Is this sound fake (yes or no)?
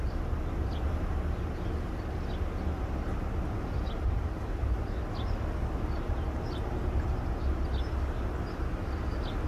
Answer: no